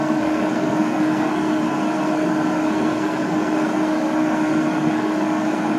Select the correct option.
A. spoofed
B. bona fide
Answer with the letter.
A